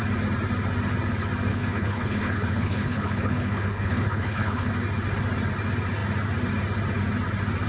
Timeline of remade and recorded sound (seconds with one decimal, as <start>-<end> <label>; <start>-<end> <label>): 0.0-1.5 recorded; 1.5-4.7 remade; 4.7-7.7 recorded